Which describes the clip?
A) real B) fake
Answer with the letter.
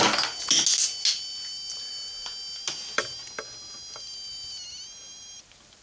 A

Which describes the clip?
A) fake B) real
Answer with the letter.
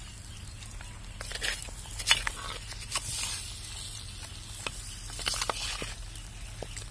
B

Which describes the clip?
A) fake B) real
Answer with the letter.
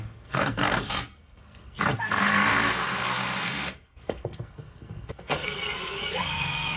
A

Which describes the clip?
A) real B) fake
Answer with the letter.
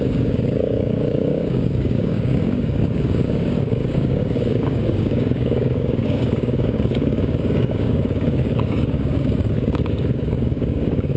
B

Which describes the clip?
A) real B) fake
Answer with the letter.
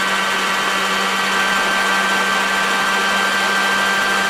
A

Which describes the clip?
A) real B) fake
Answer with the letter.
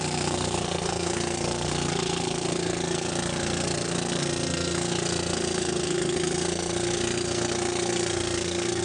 B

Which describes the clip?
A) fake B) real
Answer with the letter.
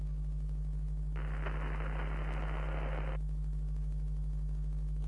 B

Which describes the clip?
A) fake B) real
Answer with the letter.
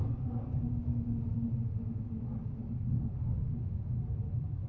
B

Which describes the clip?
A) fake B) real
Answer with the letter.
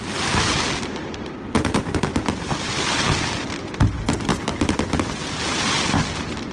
B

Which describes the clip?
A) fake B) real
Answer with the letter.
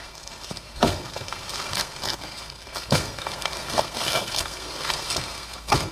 A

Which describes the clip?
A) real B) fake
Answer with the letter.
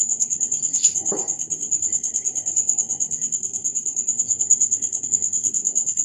B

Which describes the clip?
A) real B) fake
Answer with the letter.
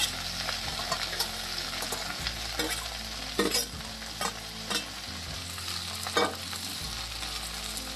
A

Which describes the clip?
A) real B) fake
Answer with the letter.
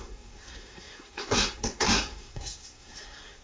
B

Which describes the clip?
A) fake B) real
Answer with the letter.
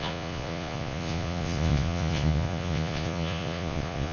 A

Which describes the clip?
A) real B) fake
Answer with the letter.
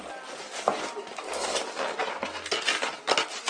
A